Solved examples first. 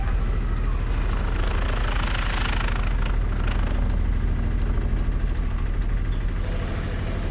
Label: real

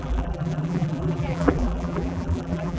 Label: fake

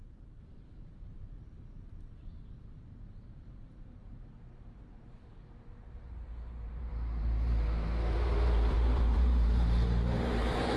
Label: fake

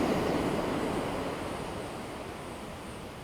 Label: real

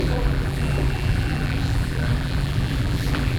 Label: fake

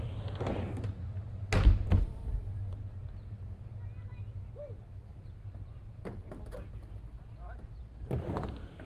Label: real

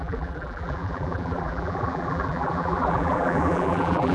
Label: fake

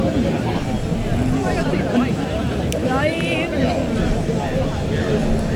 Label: real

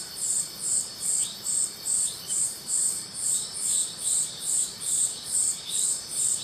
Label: fake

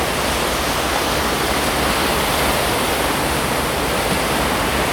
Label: real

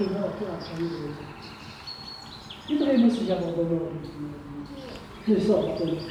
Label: real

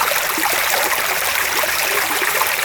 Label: fake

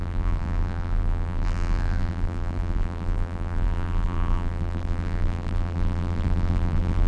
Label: fake